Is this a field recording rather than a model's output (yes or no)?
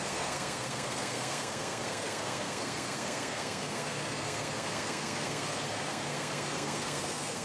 no